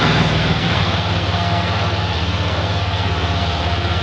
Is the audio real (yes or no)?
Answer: no